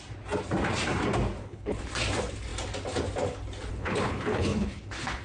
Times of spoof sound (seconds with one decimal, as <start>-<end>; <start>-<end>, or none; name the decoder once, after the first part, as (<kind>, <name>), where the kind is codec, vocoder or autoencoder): 1.4-1.9 (codec, HILCodec); 3.7-5.2